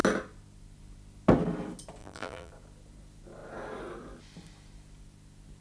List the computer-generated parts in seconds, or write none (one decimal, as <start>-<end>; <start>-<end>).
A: 2.0-2.5